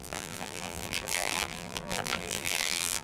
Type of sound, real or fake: fake